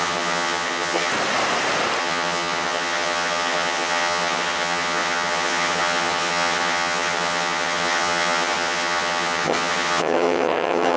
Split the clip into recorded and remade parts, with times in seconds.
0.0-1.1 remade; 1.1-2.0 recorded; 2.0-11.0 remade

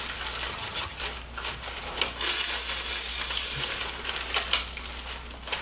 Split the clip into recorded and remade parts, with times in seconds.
0.0-0.5 recorded; 0.5-1.0 remade; 1.0-5.6 recorded